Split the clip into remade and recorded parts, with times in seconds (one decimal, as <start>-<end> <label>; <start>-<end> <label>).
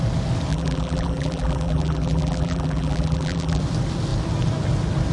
0.0-0.5 recorded; 0.5-3.6 remade; 3.6-5.1 recorded